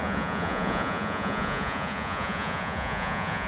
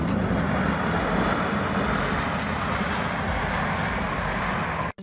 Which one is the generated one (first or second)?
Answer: first